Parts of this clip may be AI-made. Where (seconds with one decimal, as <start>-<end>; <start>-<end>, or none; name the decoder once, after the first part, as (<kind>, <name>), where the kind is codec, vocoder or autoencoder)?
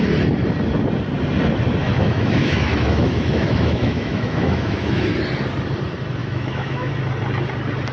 1.8-5.1 (autoencoder, DAC-VAE); 6.2-6.9